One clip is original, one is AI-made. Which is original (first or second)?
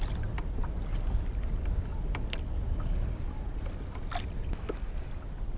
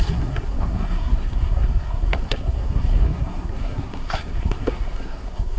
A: first